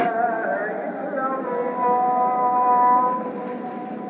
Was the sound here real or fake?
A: fake